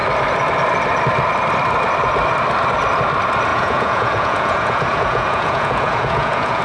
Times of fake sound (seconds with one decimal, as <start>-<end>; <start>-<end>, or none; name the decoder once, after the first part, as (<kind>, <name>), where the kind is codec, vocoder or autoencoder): 3.5-6.6 (vocoder, Vocos)